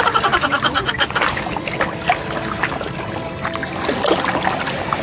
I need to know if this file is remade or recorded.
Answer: recorded